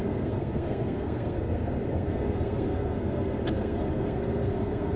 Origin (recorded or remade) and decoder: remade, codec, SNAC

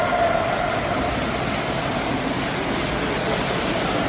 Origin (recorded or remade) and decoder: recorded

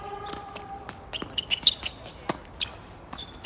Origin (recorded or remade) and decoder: recorded